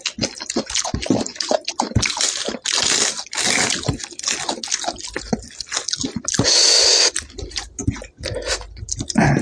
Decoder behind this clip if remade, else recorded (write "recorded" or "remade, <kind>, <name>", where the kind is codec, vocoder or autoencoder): recorded